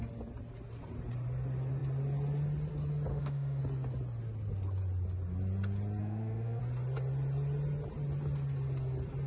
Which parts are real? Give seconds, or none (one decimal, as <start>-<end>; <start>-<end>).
0.0-3.1; 3.6-6.0; 6.6-9.3